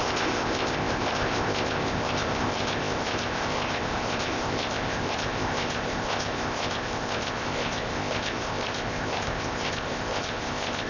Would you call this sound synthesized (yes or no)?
yes